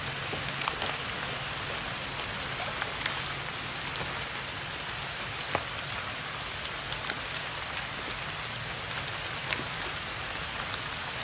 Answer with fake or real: real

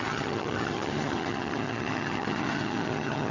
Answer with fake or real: fake